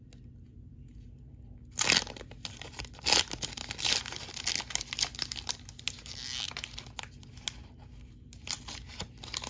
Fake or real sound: real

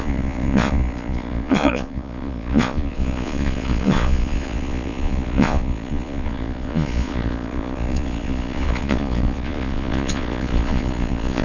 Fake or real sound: fake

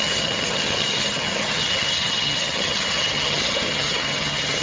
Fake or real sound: fake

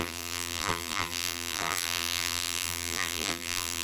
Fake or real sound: fake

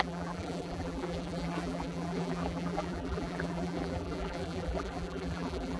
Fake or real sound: fake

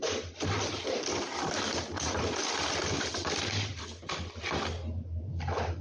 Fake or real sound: real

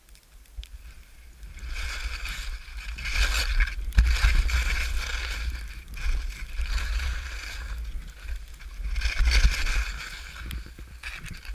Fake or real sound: real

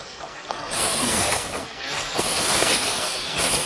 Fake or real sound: fake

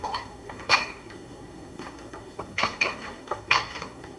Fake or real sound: fake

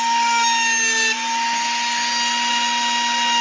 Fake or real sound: real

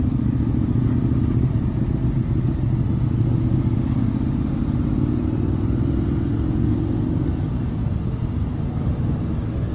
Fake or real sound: real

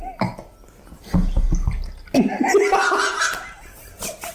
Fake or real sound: real